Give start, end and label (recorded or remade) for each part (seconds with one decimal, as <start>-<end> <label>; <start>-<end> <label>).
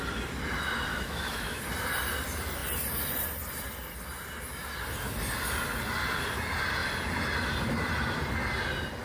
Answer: 0.0-0.9 recorded; 0.9-1.6 remade; 1.6-9.0 recorded